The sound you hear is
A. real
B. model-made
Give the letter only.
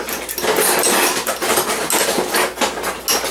A